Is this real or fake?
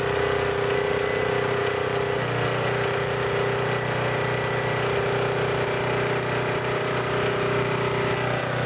real